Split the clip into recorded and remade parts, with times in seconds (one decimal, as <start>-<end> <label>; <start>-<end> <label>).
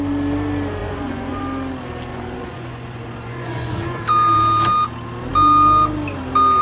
0.0-0.8 recorded; 0.8-1.4 remade; 1.4-2.1 recorded; 2.1-4.0 remade; 4.0-6.6 recorded